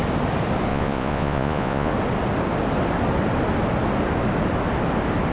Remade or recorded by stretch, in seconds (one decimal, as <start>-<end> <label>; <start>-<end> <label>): 0.0-0.7 recorded; 0.7-1.9 remade; 1.9-5.3 recorded